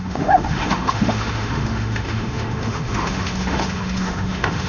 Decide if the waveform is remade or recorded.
remade